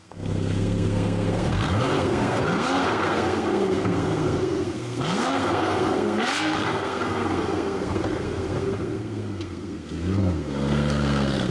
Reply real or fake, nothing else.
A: fake